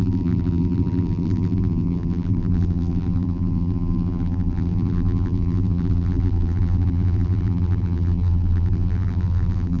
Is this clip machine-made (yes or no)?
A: yes